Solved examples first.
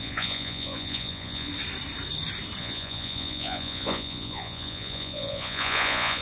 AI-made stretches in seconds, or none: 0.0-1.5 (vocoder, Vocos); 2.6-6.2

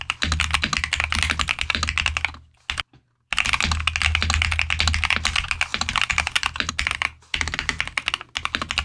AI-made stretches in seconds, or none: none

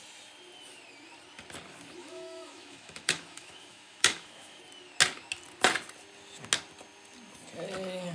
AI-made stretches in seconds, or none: 2.0-4.6 (autoencoder, DAC-VAE)